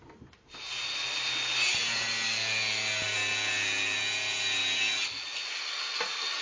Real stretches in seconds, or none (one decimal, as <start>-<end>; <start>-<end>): 0.0-6.4